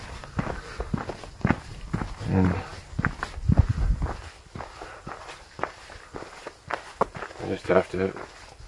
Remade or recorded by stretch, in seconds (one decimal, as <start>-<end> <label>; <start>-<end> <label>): 0.0-8.7 recorded